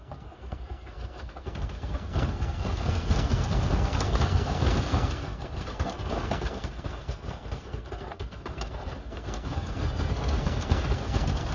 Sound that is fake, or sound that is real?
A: fake